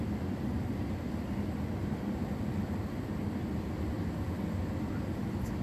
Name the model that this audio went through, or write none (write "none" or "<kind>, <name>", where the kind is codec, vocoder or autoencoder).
none